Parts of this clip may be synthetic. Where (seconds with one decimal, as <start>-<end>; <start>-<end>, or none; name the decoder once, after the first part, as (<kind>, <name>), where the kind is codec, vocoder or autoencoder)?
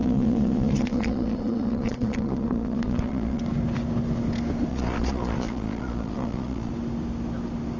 0.0-3.4 (vocoder, Vocos); 4.7-6.7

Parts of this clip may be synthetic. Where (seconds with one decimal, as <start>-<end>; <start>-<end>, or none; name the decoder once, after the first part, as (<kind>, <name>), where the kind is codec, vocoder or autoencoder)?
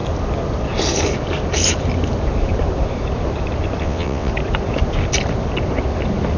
3.8-4.3 (vocoder, WaveNeXt)